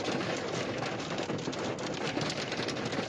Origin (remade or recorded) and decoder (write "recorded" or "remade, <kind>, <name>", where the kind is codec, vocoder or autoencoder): recorded